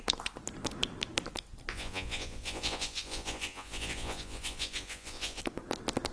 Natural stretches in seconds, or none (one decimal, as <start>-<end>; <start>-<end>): 0.0-1.7; 5.4-6.1